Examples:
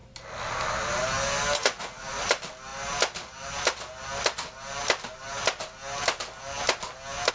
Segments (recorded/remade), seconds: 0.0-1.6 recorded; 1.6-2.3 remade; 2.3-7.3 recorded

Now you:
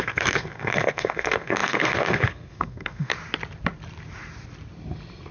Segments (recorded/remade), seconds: 0.0-3.1 remade; 3.1-5.3 recorded

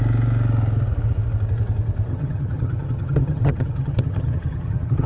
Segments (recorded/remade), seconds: 0.0-2.1 recorded; 2.1-5.1 remade

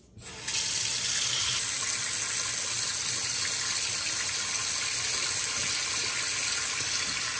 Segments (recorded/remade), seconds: 0.0-7.4 recorded